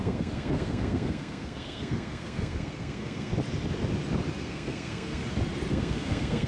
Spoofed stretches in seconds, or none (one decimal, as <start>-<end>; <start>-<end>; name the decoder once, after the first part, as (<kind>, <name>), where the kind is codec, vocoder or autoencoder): 0.0-3.3 (codec, SNAC); 4.4-5.2; 5.7-6.5